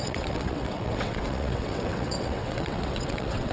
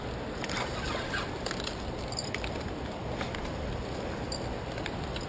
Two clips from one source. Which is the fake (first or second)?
first